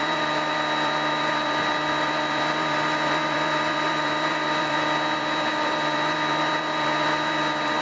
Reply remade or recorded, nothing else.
remade